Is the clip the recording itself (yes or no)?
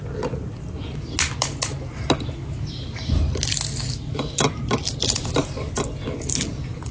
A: yes